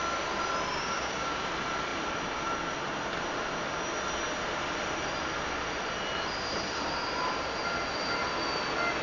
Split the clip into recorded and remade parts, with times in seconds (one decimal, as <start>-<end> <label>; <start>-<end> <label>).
0.0-0.7 recorded; 0.7-1.5 remade; 1.5-9.0 recorded